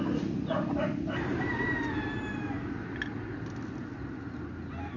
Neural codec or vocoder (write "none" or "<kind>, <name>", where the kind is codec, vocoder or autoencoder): none